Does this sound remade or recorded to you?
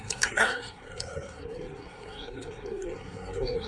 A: remade